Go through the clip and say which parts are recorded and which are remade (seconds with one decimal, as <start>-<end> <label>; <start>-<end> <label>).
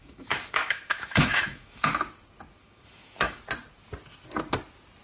0.0-1.9 remade; 1.9-2.6 recorded; 2.6-3.4 remade; 3.4-5.0 recorded